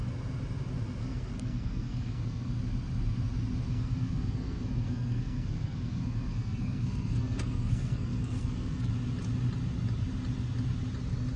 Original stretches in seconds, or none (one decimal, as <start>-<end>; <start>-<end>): 0.0-1.0; 2.5-3.7; 8.9-11.4